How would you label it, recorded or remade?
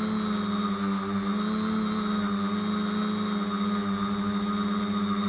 recorded